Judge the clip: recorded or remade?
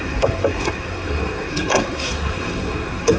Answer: remade